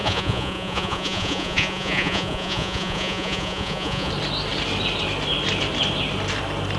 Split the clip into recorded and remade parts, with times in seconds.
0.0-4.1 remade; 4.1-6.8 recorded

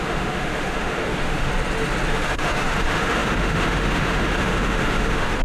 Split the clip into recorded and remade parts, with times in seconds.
0.0-1.5 remade; 1.5-2.1 recorded; 2.1-5.4 remade

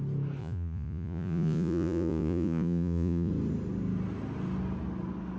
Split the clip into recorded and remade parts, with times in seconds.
0.0-0.4 recorded; 0.4-3.3 remade; 3.3-5.4 recorded

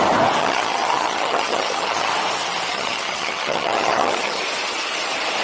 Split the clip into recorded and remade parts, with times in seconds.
0.0-0.4 recorded; 0.4-2.1 remade; 2.1-2.7 recorded; 2.7-4.4 remade; 4.4-5.4 recorded

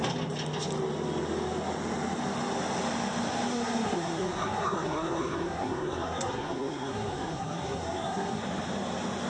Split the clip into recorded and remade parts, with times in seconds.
0.0-3.5 recorded; 3.5-8.4 remade; 8.4-9.3 recorded

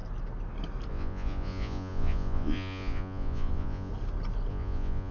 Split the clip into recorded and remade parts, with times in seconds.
0.0-0.9 recorded; 0.9-3.9 remade; 3.9-4.5 recorded; 4.5-5.1 remade